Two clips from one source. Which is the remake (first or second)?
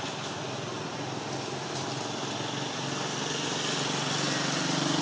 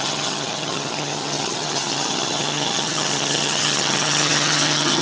second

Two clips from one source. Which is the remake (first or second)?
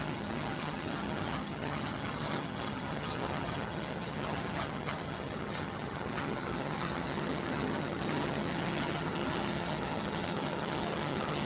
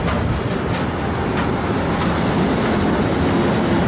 first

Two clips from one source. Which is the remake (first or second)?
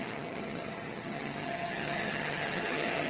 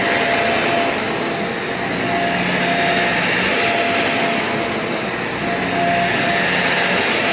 first